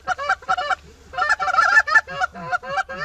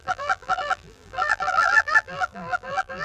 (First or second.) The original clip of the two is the first